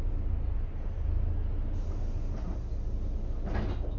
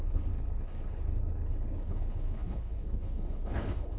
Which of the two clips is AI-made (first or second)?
second